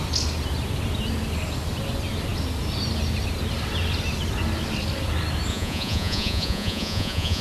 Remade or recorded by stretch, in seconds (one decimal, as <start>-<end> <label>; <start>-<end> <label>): 0.0-5.5 recorded; 5.5-7.4 remade